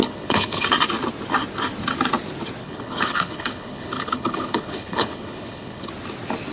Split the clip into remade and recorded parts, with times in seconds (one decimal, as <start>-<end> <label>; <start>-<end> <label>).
0.0-0.6 remade; 0.6-2.6 recorded; 2.6-5.9 remade; 5.9-6.5 recorded